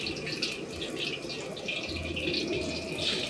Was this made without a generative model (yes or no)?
yes